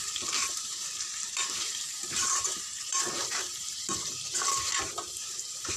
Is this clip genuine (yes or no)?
no